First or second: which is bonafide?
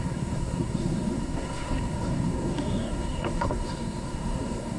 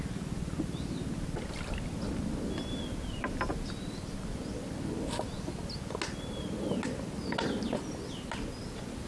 second